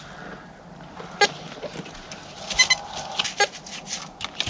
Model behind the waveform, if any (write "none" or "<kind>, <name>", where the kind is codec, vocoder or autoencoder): none